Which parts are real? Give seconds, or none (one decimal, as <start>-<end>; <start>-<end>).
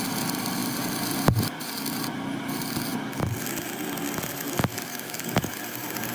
0.0-4.7; 5.6-6.1